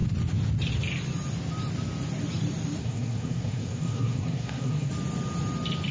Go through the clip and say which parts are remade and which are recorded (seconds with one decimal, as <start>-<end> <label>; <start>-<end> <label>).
0.0-2.8 recorded; 2.8-4.9 remade; 4.9-5.9 recorded